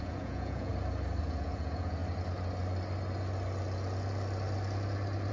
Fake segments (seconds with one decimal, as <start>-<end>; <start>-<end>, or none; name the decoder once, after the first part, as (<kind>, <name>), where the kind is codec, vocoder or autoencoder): 0.0-0.7 (vocoder, Vocos); 1.2-2.0